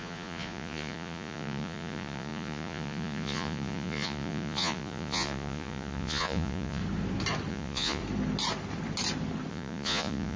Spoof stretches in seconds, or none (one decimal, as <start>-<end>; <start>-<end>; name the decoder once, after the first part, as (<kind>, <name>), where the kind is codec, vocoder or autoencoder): 0.0-6.8 (vocoder, Vocos); 7.5-8.0; 9.5-10.4